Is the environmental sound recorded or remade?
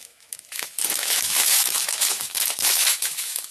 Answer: remade